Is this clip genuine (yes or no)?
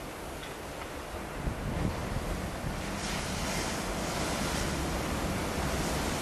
yes